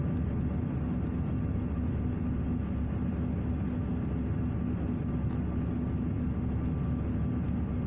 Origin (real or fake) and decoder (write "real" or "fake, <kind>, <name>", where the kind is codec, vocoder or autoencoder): real